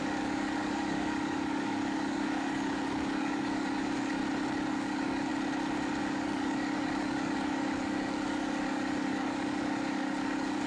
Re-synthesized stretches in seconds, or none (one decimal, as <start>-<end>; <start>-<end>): 0.0-4.2; 4.7-5.3; 6.0-10.7